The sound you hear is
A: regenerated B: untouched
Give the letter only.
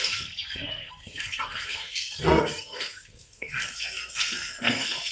A